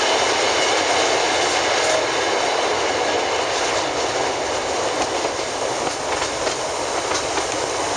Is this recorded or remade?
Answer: recorded